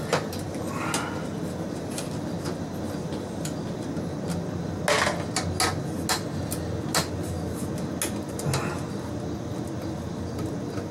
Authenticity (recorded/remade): recorded